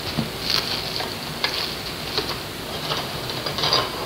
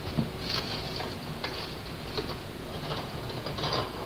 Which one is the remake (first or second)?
second